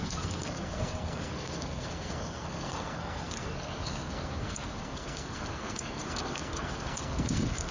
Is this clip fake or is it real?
fake